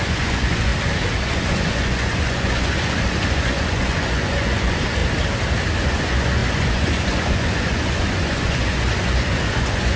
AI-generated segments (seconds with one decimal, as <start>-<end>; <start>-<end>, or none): 0.0-0.7; 1.2-5.0; 5.8-10.0